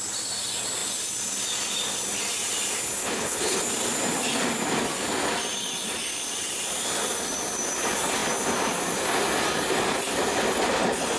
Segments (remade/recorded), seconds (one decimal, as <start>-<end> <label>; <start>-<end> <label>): 0.0-3.0 recorded; 3.0-3.6 remade; 3.6-11.2 recorded